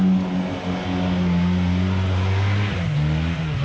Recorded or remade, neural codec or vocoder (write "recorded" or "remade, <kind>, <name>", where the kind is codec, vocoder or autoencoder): recorded